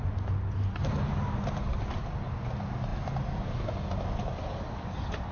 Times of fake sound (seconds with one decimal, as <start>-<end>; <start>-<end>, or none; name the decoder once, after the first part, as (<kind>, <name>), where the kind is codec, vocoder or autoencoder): none